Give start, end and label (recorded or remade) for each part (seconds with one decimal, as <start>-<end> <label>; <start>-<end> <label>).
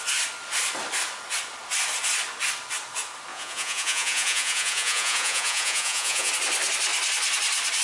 0.0-3.3 recorded; 3.3-6.3 remade; 6.3-7.8 recorded